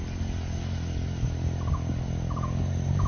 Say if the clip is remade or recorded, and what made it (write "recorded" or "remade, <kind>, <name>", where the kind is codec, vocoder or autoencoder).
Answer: recorded